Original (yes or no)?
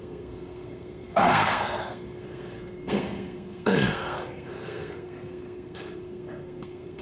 no